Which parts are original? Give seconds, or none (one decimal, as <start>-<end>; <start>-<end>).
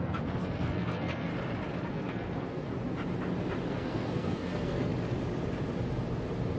1.3-1.9; 2.7-3.7; 4.9-6.6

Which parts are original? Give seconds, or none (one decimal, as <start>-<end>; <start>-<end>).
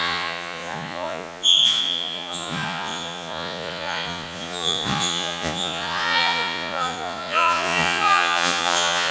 none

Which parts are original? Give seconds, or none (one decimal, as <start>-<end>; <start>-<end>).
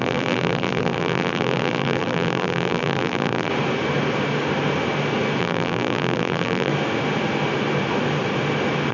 3.5-5.4; 6.7-8.9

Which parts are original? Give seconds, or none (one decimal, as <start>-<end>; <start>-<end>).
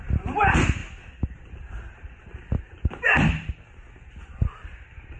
0.0-5.2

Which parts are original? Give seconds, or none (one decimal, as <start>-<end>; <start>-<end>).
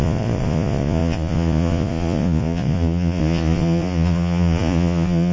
none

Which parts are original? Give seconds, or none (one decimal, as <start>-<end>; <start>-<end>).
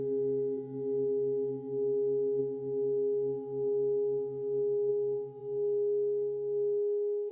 0.0-7.3